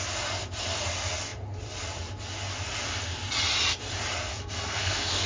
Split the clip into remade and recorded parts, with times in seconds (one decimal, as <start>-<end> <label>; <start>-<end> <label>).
0.0-4.3 recorded; 4.3-5.3 remade